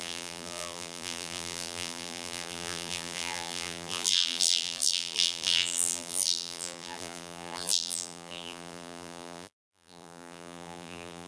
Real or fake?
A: fake